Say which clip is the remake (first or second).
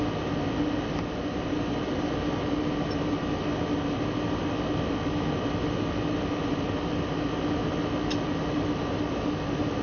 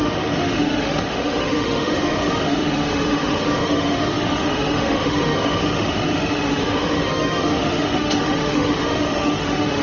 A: second